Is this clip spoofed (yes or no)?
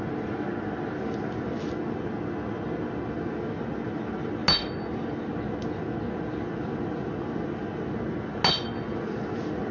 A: no